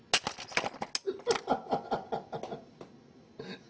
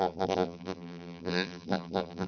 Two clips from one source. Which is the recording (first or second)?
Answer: first